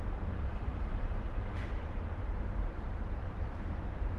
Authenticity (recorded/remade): remade